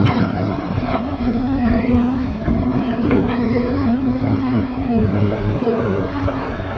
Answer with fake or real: fake